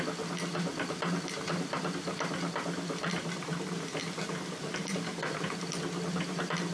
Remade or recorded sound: recorded